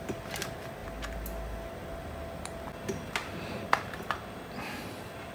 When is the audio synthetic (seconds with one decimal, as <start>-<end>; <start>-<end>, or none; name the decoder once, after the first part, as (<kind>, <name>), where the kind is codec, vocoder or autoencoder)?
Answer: none